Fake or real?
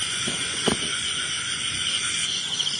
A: fake